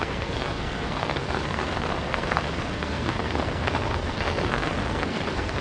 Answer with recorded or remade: remade